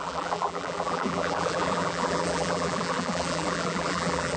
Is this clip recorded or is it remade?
remade